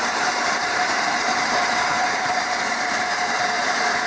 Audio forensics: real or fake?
fake